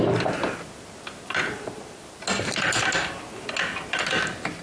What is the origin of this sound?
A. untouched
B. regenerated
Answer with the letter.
A